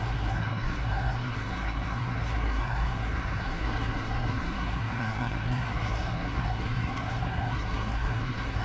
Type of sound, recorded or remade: remade